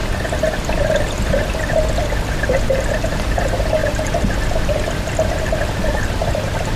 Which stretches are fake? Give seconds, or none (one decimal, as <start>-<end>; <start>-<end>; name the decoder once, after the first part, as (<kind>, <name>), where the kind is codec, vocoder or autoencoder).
0.0-1.9 (vocoder, BigVGAN v2); 6.2-6.8